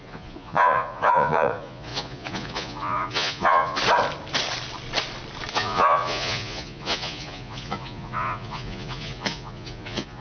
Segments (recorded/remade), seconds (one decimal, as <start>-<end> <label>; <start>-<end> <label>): 0.0-3.8 remade; 3.8-5.5 recorded; 5.5-10.2 remade